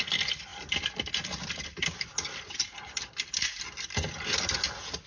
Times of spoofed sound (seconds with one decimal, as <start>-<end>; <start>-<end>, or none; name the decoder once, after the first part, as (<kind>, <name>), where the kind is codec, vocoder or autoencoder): none